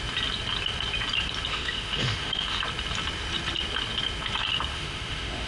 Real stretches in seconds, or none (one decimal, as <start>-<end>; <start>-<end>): 0.0-1.5; 2.6-4.7